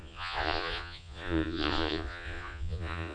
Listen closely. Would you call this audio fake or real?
fake